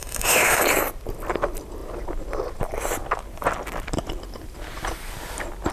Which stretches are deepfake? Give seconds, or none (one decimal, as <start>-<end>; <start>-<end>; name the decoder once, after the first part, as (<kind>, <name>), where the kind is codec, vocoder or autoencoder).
0.0-0.6 (autoencoder, DAC-VAE)